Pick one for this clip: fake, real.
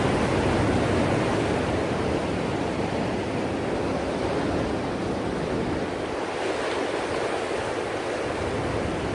real